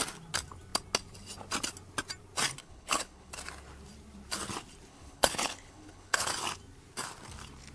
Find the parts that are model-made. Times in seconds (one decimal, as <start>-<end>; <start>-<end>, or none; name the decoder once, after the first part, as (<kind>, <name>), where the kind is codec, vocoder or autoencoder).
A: 2.6-3.3 (codec, HILCodec); 4.9-6.3

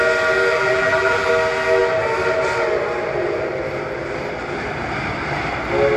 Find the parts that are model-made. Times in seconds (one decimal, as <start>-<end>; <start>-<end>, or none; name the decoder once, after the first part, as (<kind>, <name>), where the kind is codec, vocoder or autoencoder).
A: 0.5-1.3 (vocoder, BigVGAN v2)

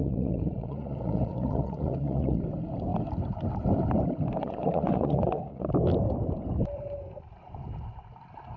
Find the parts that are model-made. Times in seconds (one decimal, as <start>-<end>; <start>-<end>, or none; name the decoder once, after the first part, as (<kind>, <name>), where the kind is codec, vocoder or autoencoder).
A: 0.0-2.4 (vocoder, Vocos); 4.4-5.7